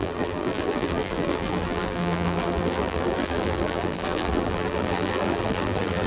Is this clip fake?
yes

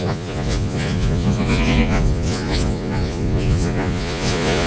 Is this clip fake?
yes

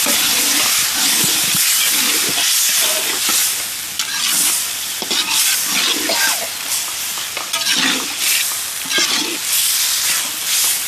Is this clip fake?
no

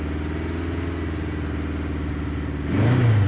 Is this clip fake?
no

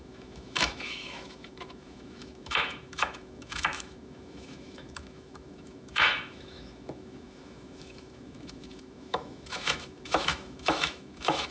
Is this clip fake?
yes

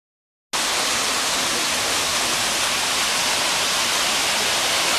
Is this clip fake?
no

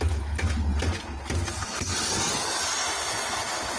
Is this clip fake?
no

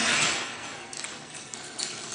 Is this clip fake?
yes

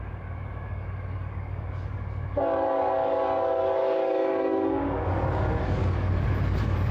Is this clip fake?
yes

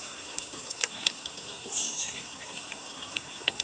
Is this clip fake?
yes